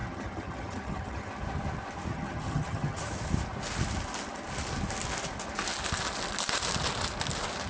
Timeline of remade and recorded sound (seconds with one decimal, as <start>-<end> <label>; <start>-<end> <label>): 0.0-1.3 remade; 1.3-2.1 recorded; 2.1-3.1 remade; 3.1-7.7 recorded